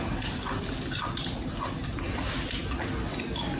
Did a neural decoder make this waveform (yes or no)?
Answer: no